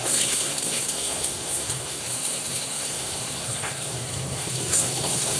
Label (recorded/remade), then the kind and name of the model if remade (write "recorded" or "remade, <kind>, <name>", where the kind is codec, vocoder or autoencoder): remade, codec, SNAC